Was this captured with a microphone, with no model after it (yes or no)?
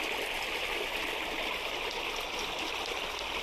yes